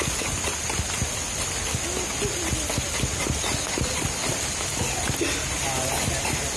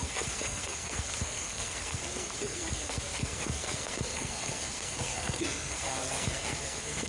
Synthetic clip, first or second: second